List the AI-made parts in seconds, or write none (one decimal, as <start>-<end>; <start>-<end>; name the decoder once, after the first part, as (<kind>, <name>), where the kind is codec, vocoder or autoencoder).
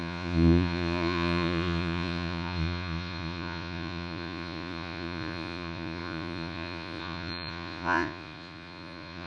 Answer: 0.0-9.3 (vocoder, Vocos)